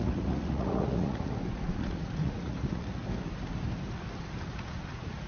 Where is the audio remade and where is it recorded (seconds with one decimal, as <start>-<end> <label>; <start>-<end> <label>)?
0.0-3.0 remade; 3.0-4.5 recorded; 4.5-5.3 remade

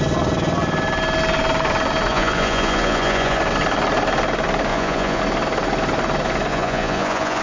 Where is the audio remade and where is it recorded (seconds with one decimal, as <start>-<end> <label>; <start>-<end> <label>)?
0.0-2.1 recorded; 2.1-3.4 remade; 3.4-4.7 recorded; 4.7-5.2 remade; 5.2-6.5 recorded; 6.5-7.4 remade

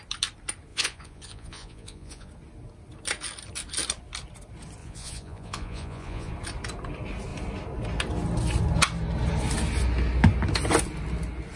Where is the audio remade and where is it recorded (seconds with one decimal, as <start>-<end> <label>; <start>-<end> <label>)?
0.0-0.7 recorded; 0.7-2.3 remade; 2.3-4.8 recorded; 4.8-6.3 remade; 6.3-11.6 recorded

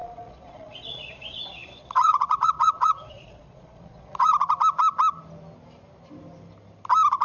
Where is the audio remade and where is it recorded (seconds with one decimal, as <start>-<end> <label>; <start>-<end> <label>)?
0.0-4.3 remade; 4.3-7.2 recorded

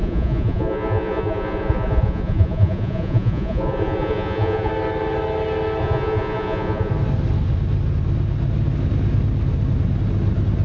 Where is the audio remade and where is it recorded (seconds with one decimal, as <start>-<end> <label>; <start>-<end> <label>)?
0.0-4.7 remade; 4.7-5.8 recorded; 5.8-6.9 remade; 6.9-10.6 recorded

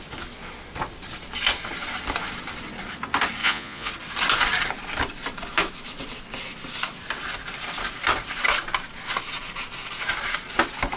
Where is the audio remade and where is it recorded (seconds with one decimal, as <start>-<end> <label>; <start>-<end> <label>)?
0.0-3.4 recorded; 3.4-3.9 remade; 3.9-11.0 recorded